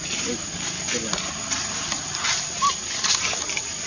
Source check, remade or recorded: recorded